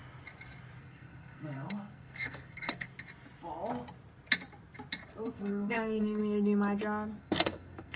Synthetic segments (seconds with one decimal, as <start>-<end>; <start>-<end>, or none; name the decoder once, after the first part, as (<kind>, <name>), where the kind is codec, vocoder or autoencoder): 0.8-2.9 (codec, SNAC); 5.3-6.2; 7.2-8.0